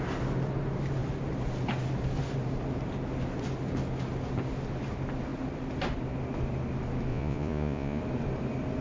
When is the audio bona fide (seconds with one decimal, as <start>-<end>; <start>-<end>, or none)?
0.0-7.1; 8.0-8.8